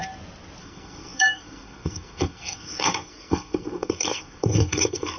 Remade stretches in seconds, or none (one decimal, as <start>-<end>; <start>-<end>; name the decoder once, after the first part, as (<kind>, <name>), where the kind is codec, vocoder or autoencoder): 0.6-5.2 (codec, SNAC)